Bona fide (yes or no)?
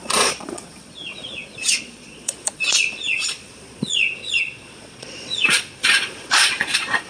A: no